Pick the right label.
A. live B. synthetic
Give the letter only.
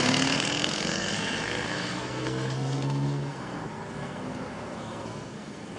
B